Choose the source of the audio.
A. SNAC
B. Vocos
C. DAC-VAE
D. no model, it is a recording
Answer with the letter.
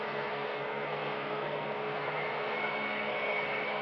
A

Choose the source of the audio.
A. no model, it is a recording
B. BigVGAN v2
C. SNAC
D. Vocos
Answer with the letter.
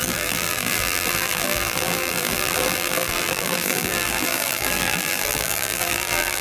B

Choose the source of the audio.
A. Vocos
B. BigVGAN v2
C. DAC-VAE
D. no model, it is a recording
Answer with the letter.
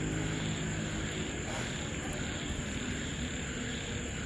D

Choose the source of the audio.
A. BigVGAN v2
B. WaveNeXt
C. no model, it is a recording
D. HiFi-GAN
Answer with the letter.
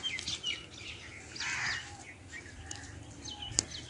C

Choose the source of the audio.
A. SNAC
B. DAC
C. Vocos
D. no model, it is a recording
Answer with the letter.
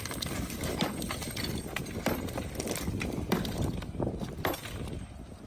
D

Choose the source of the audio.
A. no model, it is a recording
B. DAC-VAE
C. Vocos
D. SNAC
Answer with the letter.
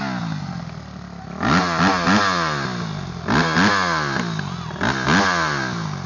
A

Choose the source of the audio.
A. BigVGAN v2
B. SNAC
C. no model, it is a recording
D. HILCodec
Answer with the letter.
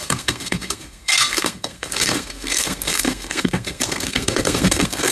B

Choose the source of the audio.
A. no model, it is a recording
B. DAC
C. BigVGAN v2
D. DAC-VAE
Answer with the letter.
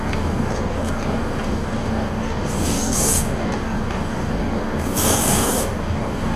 B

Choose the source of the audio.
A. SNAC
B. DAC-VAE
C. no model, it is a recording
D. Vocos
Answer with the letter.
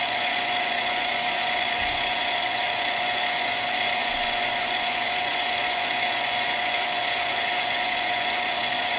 D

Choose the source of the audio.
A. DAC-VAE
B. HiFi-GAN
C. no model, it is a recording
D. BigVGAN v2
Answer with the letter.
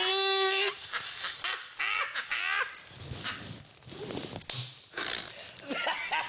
C